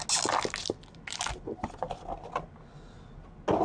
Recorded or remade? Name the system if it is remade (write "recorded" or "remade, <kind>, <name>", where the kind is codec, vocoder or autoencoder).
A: recorded